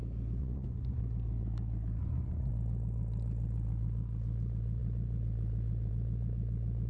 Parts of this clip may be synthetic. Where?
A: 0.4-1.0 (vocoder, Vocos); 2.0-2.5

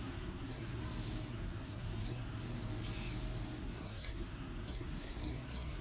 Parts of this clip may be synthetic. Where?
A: 0.0-0.8 (codec, SNAC); 1.3-2.4; 3.6-5.8

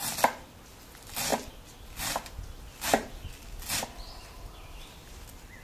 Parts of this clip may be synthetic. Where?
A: none

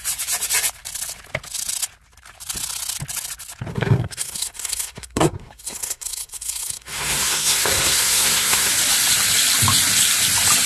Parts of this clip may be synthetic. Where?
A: 3.7-8.7 (codec, SNAC)

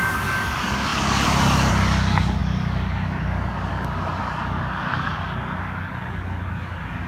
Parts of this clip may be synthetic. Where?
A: 0.0-7.1 (codec, DAC)